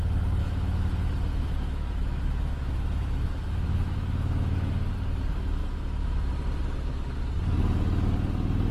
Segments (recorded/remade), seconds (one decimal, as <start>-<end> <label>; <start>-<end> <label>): 0.0-0.4 recorded; 0.4-0.9 remade; 0.9-1.3 recorded; 1.3-4.7 remade; 4.7-5.6 recorded; 5.6-6.3 remade; 6.3-8.7 recorded